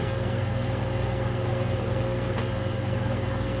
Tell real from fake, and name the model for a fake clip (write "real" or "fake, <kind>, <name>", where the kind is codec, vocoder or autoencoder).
fake, codec, SNAC